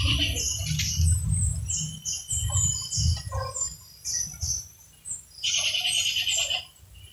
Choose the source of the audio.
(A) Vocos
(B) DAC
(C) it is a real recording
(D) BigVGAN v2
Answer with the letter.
D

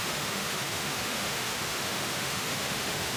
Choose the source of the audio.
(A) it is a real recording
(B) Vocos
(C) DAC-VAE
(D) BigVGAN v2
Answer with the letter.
C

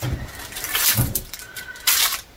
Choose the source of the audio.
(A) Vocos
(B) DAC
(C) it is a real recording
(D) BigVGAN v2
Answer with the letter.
D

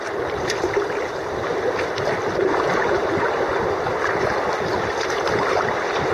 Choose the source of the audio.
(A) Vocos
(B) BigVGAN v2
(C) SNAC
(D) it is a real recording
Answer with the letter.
D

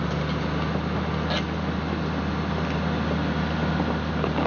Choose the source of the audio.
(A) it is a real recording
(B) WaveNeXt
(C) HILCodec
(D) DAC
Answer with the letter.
A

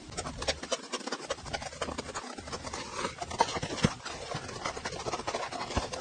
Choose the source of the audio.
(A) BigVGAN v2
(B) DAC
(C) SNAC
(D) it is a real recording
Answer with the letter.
A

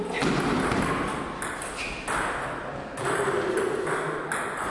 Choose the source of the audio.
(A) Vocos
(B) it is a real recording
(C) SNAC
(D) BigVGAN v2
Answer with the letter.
B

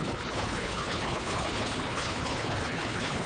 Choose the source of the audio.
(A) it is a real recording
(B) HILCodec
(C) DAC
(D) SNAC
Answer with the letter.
B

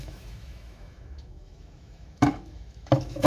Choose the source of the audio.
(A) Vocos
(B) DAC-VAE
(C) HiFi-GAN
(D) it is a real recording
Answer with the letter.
B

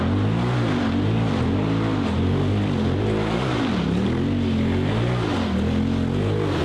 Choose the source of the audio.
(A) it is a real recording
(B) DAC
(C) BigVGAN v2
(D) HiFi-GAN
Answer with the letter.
A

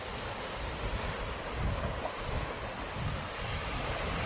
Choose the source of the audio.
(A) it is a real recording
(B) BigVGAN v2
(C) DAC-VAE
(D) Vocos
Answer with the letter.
A